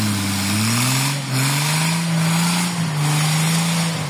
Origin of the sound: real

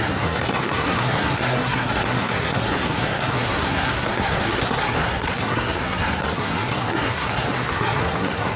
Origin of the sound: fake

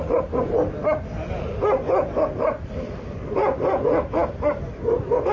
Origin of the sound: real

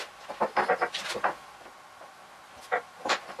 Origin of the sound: real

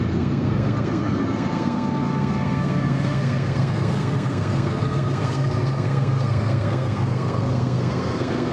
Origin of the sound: fake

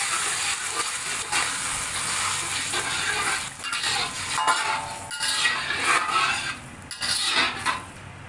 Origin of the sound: real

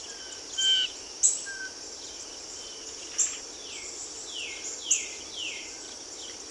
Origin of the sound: real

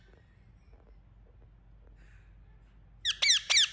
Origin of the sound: real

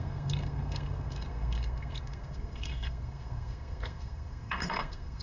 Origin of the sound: fake